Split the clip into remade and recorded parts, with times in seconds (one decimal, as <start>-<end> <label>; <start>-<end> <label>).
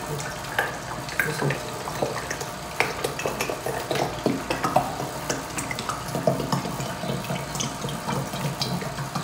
0.0-9.2 recorded